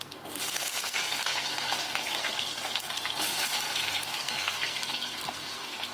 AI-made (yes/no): yes